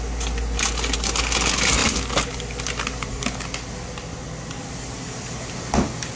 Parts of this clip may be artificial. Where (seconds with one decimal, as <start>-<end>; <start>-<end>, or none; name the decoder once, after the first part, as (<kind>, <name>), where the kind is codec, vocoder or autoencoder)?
none